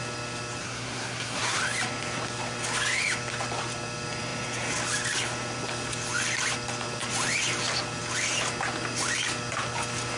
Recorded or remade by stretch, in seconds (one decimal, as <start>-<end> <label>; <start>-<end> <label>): 0.0-0.6 recorded; 0.6-1.6 remade; 1.6-10.2 recorded